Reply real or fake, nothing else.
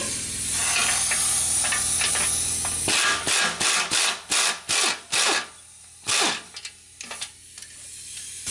real